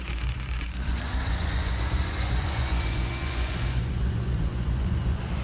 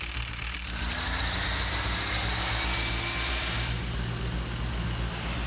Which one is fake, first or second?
first